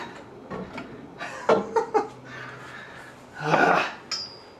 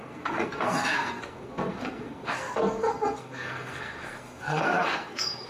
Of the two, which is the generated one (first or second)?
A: second